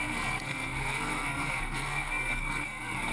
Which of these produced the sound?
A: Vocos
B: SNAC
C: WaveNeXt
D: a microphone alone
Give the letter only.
B